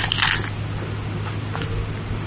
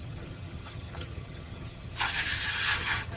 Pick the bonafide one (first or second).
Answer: first